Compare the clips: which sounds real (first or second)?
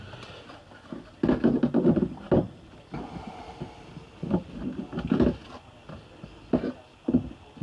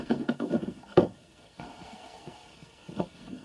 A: first